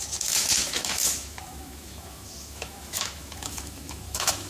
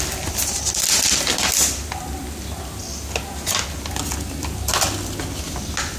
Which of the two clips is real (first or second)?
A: second